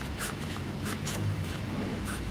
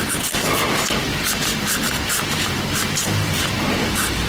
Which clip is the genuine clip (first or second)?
second